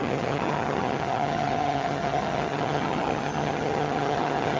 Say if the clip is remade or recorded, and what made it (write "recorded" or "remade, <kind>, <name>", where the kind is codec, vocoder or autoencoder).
remade, vocoder, HiFi-GAN